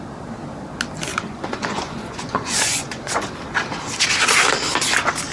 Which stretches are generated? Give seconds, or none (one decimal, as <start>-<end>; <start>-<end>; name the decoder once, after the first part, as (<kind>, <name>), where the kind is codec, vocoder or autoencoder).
1.1-3.3 (vocoder, Vocos)